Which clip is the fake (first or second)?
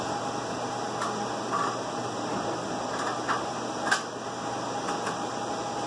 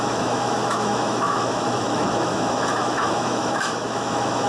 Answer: second